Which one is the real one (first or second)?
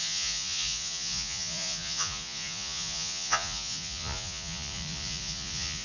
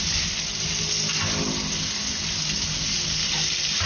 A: second